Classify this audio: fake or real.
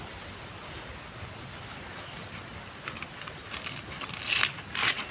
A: real